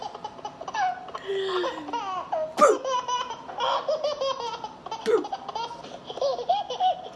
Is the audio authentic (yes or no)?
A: yes